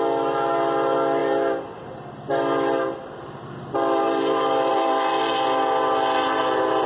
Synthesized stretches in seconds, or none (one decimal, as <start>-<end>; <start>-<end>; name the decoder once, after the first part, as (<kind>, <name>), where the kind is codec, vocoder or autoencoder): 4.7-5.3 (vocoder, BigVGAN v2)